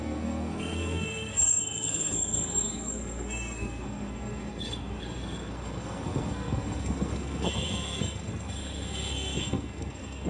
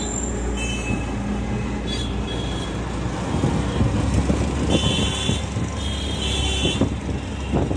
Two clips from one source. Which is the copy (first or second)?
first